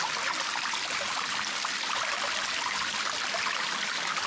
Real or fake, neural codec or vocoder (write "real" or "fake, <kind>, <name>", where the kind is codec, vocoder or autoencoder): real